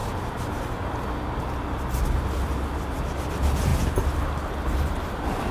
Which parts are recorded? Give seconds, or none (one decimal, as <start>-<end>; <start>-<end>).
0.0-3.3; 3.7-4.7